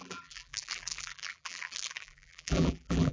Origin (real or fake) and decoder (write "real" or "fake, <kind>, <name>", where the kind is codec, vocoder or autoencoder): fake, vocoder, BigVGAN v2